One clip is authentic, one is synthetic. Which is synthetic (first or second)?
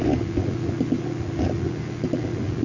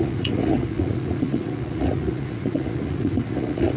second